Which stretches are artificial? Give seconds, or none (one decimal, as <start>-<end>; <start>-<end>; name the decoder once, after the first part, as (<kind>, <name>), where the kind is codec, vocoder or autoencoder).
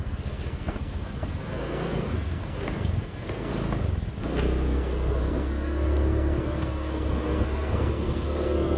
0.0-3.5 (codec, SNAC); 4.2-8.8